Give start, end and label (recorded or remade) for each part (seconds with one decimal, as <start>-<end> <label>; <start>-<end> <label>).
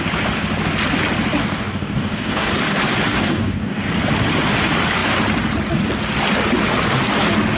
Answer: 0.0-1.4 recorded; 1.4-2.5 remade; 2.5-3.1 recorded; 3.1-3.9 remade; 3.9-7.6 recorded